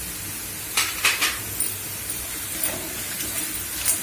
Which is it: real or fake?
real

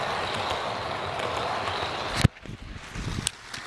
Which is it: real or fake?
real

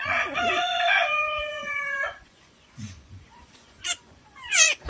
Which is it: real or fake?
fake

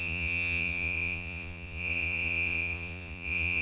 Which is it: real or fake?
fake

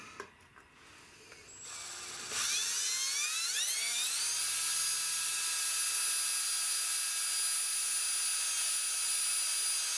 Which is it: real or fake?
real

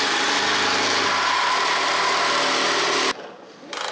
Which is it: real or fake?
real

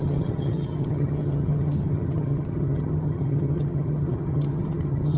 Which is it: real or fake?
fake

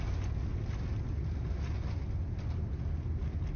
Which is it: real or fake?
real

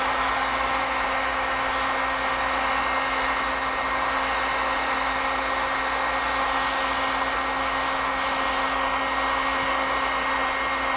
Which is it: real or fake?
real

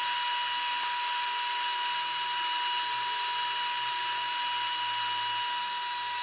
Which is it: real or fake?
real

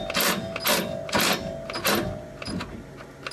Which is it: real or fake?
real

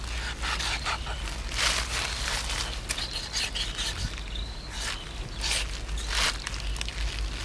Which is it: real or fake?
real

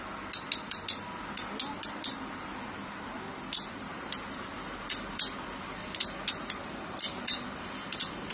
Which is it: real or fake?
real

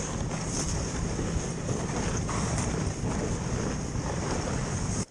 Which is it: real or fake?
real